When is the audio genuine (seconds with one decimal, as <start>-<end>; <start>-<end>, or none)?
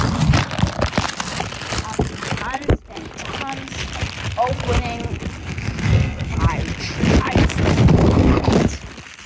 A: 0.0-5.4; 6.4-7.9; 8.5-9.3